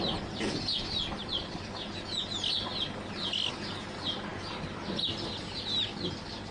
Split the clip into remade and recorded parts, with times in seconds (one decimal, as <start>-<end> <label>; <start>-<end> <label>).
0.0-6.5 recorded